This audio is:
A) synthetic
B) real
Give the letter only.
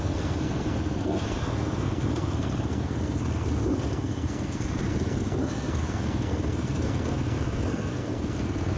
A